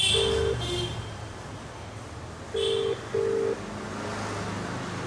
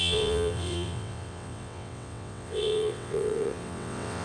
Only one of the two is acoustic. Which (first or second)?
first